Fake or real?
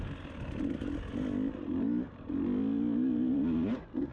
real